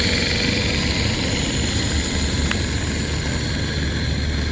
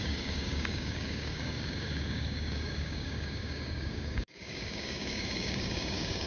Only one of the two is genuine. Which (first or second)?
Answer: first